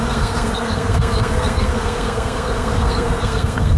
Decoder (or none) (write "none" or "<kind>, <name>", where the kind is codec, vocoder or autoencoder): codec, SNAC